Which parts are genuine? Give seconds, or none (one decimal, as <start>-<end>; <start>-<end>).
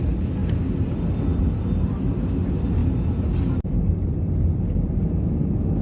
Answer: 0.0-5.8